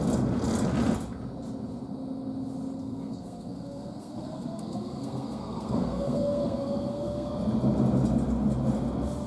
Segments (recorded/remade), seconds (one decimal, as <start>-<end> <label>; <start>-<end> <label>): 0.0-2.8 recorded; 2.8-7.3 remade; 7.3-9.3 recorded